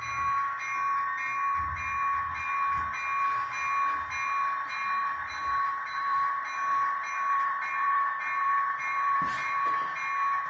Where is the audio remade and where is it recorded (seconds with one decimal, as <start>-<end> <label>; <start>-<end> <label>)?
0.0-5.0 recorded; 5.0-9.7 remade; 9.7-10.5 recorded